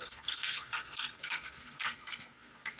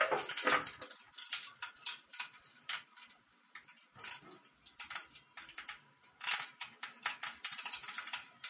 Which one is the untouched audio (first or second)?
second